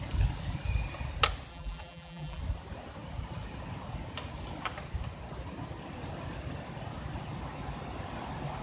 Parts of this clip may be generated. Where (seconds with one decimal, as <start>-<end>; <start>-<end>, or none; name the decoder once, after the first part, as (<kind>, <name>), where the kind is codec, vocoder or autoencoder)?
1.5-2.4 (vocoder, BigVGAN v2)